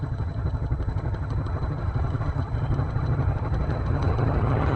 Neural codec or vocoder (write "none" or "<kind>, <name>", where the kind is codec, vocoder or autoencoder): vocoder, HiFi-GAN